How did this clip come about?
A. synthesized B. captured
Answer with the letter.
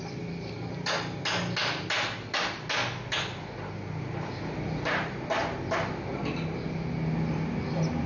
B